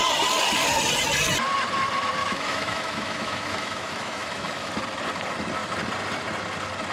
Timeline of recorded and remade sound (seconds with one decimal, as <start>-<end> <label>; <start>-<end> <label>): 0.0-2.2 recorded; 2.2-4.7 remade; 4.7-6.9 recorded